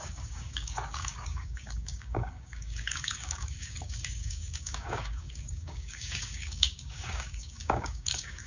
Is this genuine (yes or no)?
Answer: no